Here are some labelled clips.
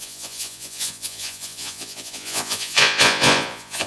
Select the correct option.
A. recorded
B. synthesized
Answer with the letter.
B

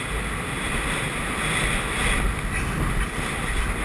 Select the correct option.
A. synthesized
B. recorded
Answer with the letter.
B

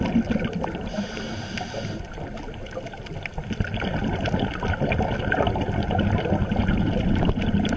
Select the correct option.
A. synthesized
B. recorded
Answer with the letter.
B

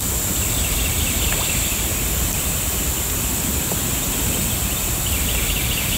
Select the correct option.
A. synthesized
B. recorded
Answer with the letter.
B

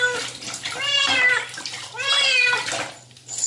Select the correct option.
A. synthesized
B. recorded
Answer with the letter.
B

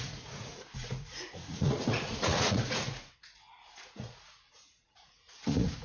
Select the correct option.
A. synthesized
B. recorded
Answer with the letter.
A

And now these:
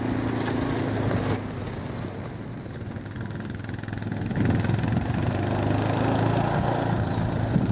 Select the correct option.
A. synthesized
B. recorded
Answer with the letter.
B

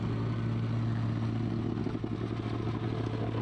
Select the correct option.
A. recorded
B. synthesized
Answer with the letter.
A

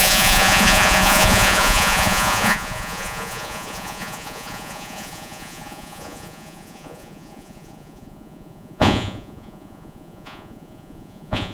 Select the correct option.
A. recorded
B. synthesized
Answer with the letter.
B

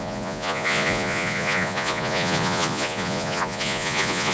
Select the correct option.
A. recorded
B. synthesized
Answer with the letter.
B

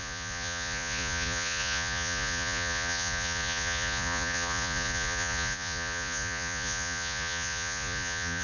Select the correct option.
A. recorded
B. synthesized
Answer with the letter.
B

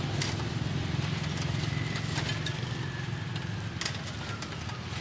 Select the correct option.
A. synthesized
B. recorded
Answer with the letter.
B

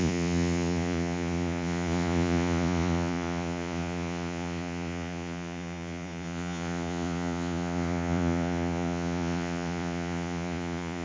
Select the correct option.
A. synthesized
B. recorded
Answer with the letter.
A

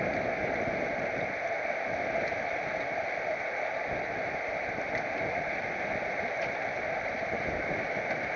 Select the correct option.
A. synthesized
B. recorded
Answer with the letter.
B